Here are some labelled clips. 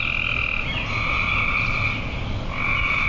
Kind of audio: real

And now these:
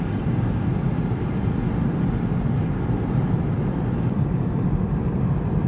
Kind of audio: real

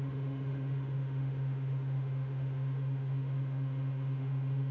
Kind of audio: fake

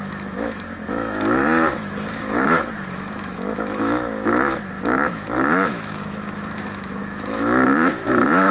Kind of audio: fake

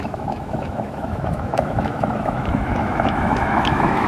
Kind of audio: fake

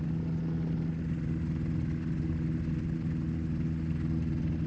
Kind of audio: real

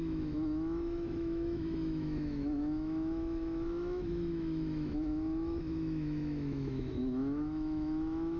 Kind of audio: fake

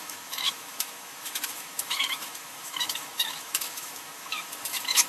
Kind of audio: fake